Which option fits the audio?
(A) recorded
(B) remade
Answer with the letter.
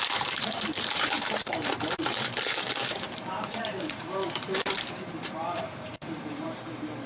B